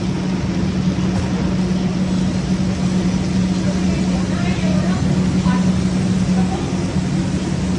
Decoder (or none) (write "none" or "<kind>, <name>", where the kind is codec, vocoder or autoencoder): none